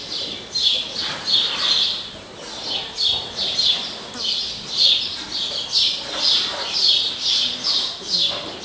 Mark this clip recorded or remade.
recorded